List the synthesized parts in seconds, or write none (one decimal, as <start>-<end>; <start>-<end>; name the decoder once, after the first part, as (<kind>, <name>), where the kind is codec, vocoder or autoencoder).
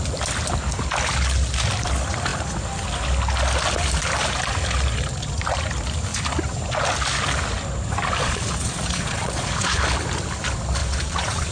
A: 8.2-9.8 (vocoder, Vocos); 10.8-11.5